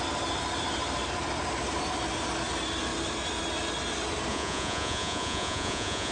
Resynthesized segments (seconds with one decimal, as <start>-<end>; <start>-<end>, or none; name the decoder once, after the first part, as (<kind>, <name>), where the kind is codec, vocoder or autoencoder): 4.3-6.1 (vocoder, Vocos)